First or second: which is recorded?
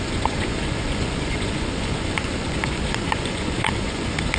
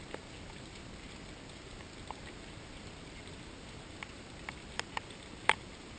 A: second